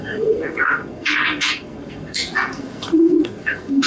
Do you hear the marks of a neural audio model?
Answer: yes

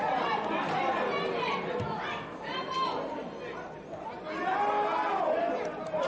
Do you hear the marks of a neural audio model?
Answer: no